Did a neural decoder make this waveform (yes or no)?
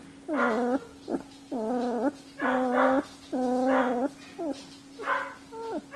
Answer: no